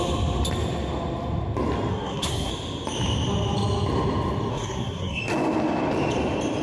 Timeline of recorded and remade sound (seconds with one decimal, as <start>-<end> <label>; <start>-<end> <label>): 0.0-1.9 recorded; 1.9-2.5 remade; 2.5-4.5 recorded; 4.5-5.2 remade; 5.2-6.6 recorded

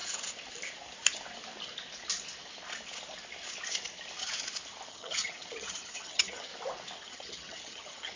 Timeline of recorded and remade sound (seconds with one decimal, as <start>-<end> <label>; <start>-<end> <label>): 0.0-4.9 recorded; 4.9-6.5 remade; 6.5-7.0 recorded; 7.0-8.2 remade

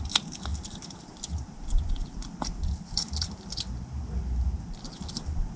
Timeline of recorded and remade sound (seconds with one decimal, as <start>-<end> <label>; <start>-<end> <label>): 0.0-0.5 recorded; 0.5-3.9 remade; 3.9-5.6 recorded